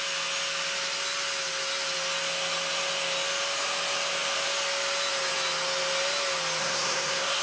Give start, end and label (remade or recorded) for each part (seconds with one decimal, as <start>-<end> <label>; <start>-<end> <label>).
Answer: 0.0-6.6 recorded; 6.6-7.4 remade